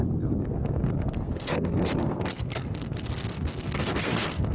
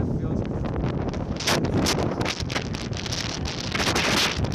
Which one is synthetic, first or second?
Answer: first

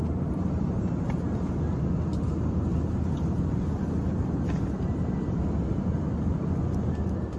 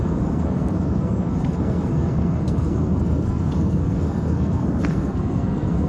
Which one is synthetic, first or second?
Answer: second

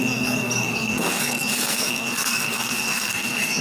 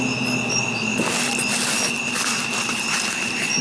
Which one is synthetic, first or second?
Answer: first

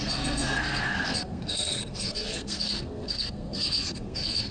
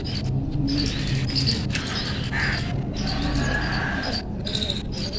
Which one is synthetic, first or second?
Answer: first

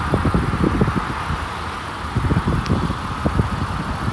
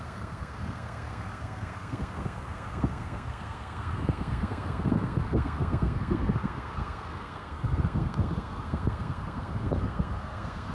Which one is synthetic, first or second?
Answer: second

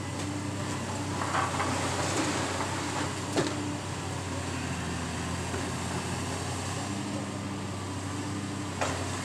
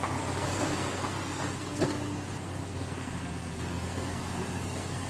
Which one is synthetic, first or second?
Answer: second